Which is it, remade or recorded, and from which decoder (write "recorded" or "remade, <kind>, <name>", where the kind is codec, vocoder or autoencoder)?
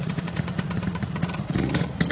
remade, vocoder, Vocos